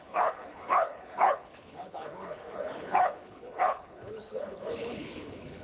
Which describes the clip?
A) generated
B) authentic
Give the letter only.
A